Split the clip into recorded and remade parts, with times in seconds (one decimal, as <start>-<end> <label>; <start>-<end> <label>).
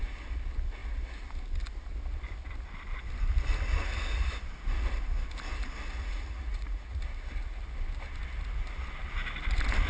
0.0-6.0 recorded; 6.0-7.0 remade; 7.0-9.9 recorded